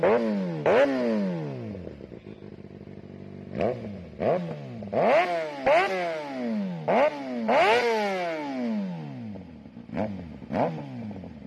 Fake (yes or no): no